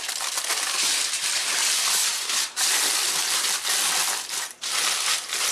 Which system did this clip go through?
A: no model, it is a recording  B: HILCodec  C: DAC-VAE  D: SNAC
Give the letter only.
A